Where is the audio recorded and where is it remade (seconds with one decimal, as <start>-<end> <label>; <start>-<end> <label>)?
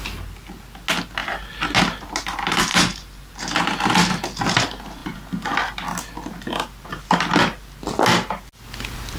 0.0-2.7 recorded; 2.7-3.4 remade; 3.4-9.2 recorded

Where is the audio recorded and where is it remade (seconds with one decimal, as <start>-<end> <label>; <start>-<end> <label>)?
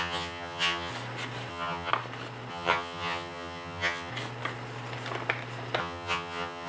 0.0-0.9 remade; 0.9-1.5 recorded; 1.5-1.9 remade; 1.9-2.5 recorded; 2.5-4.1 remade; 4.1-5.8 recorded; 5.8-6.7 remade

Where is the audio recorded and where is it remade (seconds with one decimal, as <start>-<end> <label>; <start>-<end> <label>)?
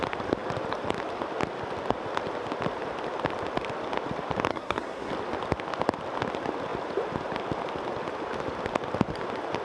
0.0-4.5 recorded; 4.5-5.1 remade; 5.1-9.6 recorded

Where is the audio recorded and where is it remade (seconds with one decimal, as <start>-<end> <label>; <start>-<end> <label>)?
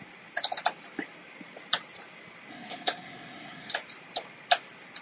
0.0-2.5 recorded; 2.5-3.7 remade; 3.7-5.0 recorded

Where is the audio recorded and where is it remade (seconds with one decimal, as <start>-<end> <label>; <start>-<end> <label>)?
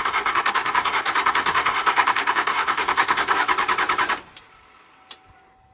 0.0-3.4 remade; 3.4-5.7 recorded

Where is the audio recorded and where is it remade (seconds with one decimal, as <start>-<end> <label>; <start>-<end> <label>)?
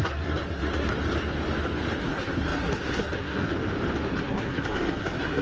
0.0-0.9 remade; 0.9-2.0 recorded; 2.0-3.5 remade; 3.5-4.1 recorded; 4.1-5.4 remade